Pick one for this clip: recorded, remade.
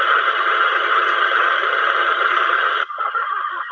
remade